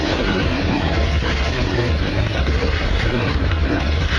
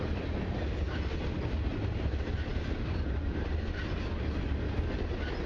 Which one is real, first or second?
second